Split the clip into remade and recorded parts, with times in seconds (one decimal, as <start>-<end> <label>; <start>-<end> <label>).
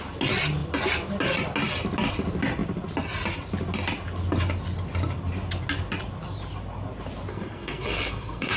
0.0-7.3 recorded; 7.3-8.6 remade